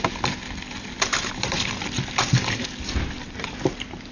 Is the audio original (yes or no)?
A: no